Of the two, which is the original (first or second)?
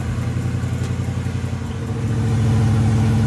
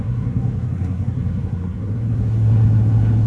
first